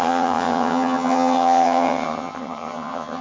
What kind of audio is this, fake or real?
fake